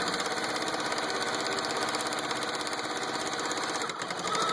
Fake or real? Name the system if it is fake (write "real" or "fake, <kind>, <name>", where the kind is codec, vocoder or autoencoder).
real